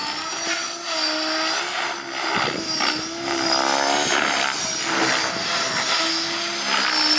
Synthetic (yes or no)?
no